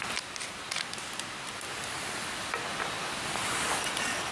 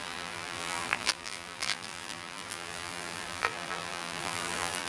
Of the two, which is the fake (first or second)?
second